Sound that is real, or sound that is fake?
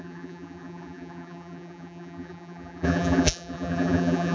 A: fake